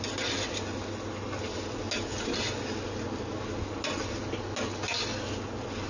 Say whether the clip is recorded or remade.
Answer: recorded